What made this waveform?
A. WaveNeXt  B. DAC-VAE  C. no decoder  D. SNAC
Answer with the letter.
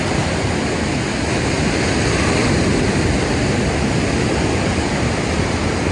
C